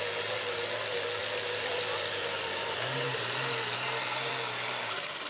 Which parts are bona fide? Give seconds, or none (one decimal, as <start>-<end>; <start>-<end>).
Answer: 0.0-1.2; 4.3-5.3